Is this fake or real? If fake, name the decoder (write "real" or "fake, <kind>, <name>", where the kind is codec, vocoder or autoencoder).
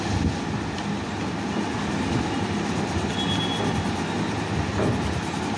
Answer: real